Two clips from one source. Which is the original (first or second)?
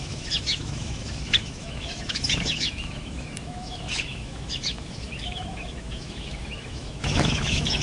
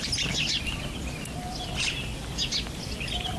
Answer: second